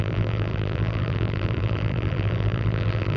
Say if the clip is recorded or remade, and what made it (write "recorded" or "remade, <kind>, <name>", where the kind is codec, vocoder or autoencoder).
remade, vocoder, BigVGAN v2